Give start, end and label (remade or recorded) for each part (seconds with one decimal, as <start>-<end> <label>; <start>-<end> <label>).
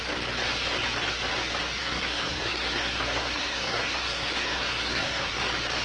0.0-1.8 recorded; 1.8-5.3 remade; 5.3-5.8 recorded